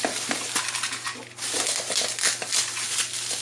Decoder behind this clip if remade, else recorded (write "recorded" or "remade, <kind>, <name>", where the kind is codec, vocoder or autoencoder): recorded